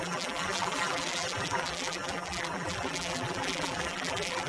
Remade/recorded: remade